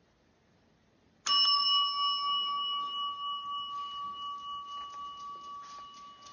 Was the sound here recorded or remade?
recorded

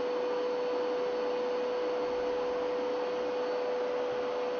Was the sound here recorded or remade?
recorded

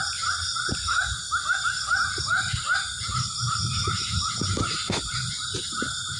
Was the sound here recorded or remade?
recorded